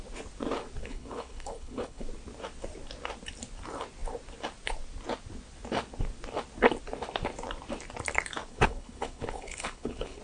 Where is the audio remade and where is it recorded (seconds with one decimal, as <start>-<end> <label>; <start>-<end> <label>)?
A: 0.0-0.8 recorded; 0.8-2.0 remade; 2.0-8.5 recorded; 8.5-10.2 remade